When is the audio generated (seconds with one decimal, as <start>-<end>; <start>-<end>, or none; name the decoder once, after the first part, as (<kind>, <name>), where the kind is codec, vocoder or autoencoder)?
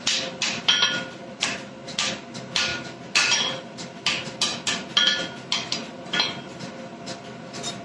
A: none